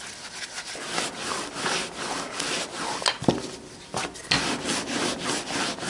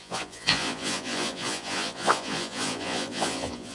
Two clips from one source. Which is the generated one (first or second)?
second